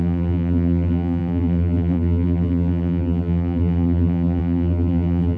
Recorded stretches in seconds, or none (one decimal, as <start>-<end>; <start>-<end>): none